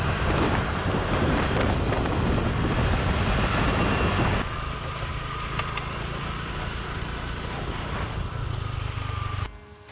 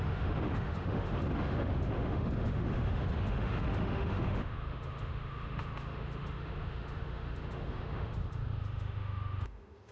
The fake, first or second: second